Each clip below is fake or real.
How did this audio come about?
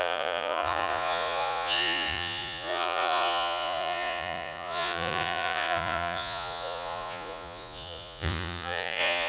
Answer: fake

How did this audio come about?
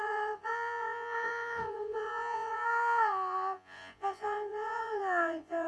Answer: fake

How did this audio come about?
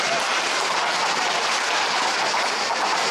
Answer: real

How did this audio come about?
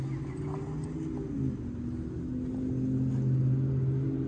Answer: real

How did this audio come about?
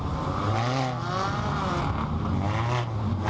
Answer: real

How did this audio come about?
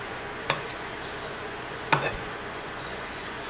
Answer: fake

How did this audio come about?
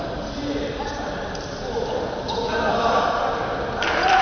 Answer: real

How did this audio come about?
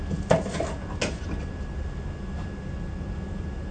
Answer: real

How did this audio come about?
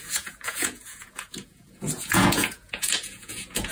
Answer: fake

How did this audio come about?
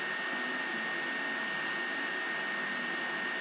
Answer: real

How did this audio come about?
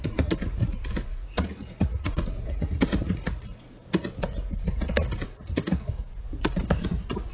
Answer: fake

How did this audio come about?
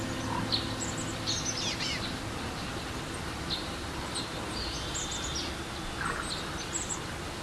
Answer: real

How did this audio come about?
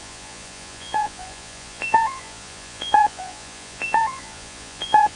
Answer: fake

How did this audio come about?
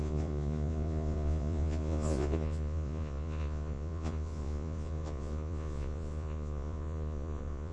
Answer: fake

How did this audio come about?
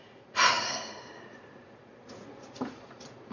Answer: fake